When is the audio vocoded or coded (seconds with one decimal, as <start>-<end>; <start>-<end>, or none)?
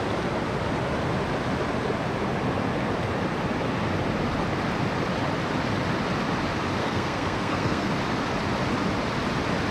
6.8-7.9